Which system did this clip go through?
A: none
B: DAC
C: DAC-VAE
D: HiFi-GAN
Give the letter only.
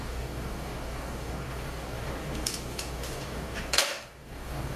B